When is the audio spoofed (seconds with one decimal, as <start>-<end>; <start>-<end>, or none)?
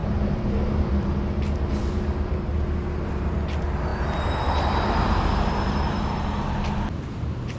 0.0-1.2; 1.8-2.5; 3.9-6.0